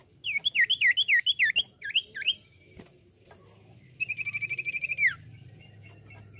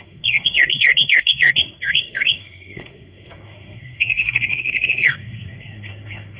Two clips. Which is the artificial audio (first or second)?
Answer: second